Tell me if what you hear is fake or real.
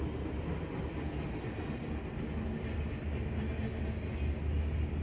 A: real